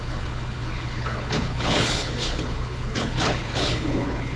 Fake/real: fake